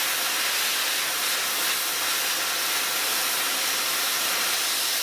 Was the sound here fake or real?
real